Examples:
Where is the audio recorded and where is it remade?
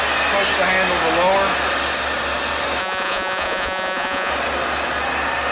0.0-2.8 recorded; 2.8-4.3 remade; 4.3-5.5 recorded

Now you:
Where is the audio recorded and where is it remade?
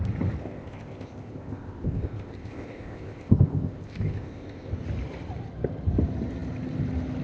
0.0-0.4 recorded; 0.4-4.7 remade; 4.7-7.2 recorded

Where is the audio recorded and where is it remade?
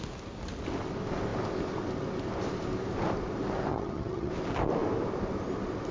0.0-3.7 recorded; 3.7-4.3 remade; 4.3-5.9 recorded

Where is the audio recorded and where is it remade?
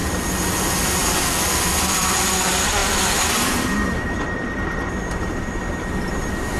0.0-0.6 recorded; 0.6-6.6 remade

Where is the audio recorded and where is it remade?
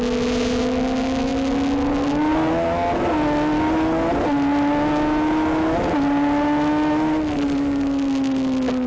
0.0-8.9 recorded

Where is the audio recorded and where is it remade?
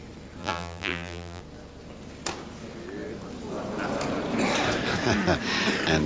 0.0-0.4 recorded; 0.4-1.4 remade; 1.4-6.1 recorded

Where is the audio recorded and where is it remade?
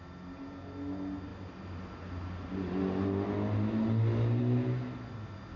0.0-5.6 recorded